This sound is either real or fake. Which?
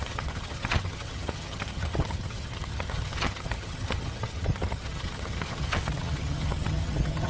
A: fake